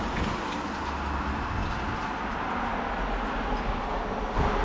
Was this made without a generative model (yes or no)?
yes